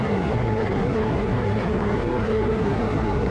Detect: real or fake fake